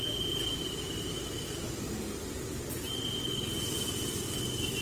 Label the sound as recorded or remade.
recorded